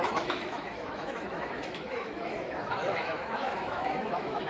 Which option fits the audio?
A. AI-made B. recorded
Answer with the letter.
A